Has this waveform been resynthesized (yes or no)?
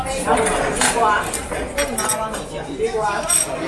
no